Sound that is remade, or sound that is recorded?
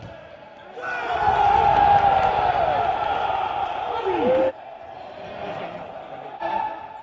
recorded